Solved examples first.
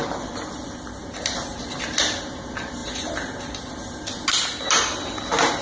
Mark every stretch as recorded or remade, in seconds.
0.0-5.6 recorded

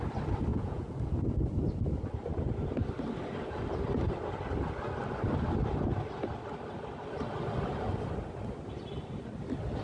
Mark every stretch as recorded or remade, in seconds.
0.0-0.5 recorded; 0.5-1.1 remade; 1.1-9.8 recorded

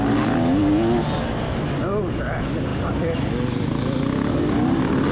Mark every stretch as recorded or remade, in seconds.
0.0-5.1 recorded

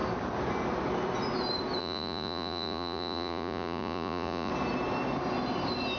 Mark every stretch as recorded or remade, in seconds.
0.0-1.8 recorded; 1.8-4.5 remade; 4.5-6.0 recorded